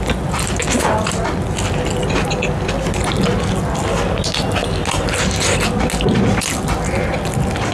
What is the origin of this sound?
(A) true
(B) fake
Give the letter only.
A